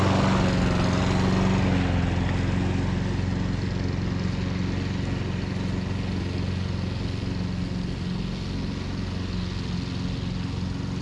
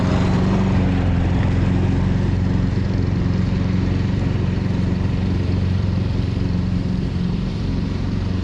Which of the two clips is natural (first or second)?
first